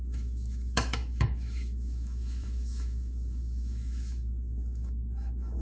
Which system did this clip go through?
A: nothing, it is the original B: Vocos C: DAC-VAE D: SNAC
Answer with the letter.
C